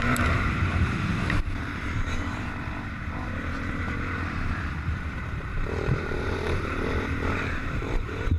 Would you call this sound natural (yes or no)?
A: no